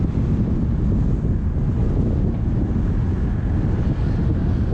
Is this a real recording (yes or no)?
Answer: yes